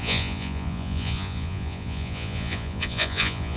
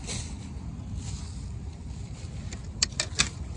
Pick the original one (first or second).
second